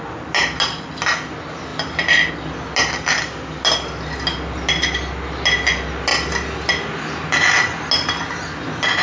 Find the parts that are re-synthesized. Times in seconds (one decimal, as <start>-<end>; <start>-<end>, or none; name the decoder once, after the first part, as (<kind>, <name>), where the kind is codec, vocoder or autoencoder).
none